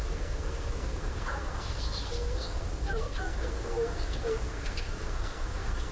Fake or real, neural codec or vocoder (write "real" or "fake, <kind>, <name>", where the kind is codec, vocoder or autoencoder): fake, codec, SNAC